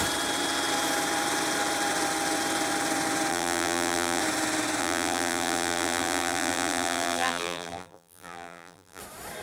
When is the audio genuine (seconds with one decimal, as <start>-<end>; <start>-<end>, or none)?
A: 0.0-3.3; 4.2-4.8; 9.0-9.4